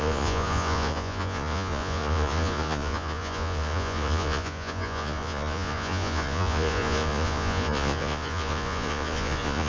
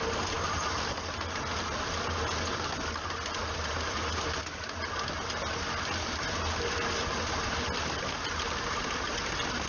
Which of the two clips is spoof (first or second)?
first